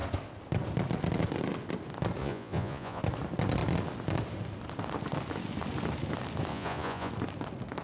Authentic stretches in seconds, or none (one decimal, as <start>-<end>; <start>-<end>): 0.0-2.2; 3.0-6.5; 7.1-7.8